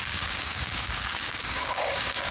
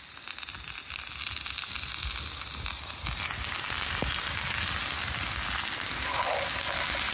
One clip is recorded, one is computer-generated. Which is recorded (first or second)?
second